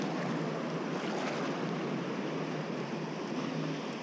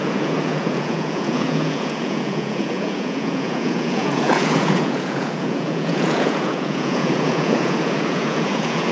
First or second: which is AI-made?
second